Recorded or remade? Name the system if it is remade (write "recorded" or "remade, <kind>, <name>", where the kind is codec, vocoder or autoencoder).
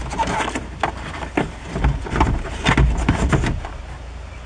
recorded